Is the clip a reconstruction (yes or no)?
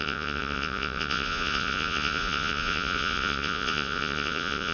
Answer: yes